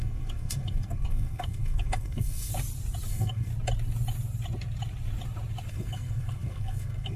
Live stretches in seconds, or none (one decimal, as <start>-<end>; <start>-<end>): 2.5-3.1; 3.5-5.7